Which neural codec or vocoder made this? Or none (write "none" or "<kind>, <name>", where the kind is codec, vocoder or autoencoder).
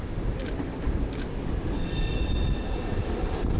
none